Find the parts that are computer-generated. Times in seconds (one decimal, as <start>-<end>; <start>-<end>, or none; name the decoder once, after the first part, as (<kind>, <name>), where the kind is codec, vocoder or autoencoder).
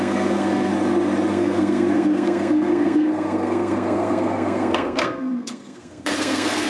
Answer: 0.0-0.7 (codec, SNAC); 1.3-6.7